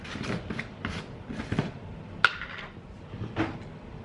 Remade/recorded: recorded